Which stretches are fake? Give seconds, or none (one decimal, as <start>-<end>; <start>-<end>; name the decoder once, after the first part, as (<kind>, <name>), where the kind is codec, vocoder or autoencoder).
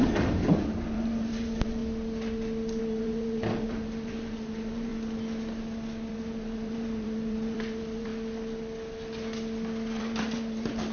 0.0-1.8 (vocoder, BigVGAN v2); 2.8-4.9; 6.1-8.1; 10.0-10.9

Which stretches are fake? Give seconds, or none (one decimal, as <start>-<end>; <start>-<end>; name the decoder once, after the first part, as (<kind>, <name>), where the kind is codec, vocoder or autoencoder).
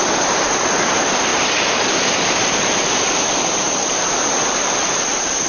0.0-1.3 (vocoder, BigVGAN v2); 1.9-5.5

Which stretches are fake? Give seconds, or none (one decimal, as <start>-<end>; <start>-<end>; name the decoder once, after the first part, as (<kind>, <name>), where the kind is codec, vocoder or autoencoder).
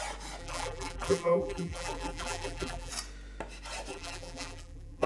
0.4-2.9 (vocoder, BigVGAN v2); 3.9-5.1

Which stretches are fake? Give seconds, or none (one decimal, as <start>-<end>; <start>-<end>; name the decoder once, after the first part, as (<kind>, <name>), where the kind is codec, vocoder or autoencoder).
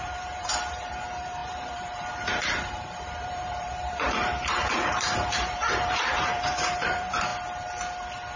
0.0-7.3 (vocoder, BigVGAN v2)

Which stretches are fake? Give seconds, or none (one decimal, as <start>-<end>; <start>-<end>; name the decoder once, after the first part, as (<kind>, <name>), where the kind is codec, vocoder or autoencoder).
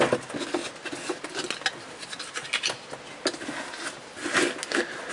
none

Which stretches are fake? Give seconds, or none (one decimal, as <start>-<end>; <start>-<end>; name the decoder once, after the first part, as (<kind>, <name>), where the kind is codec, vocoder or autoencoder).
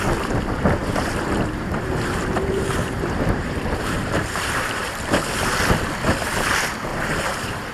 0.8-4.9 (vocoder, BigVGAN v2); 6.9-7.7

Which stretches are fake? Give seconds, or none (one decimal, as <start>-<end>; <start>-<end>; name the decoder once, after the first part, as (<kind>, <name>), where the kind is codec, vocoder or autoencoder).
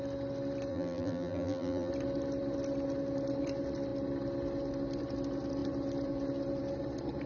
0.7-1.9 (vocoder, BigVGAN v2)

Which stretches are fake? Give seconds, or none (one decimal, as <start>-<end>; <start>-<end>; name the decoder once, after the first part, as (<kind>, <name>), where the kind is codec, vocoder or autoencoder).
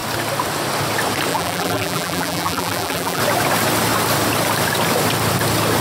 1.3-3.2 (vocoder, BigVGAN v2)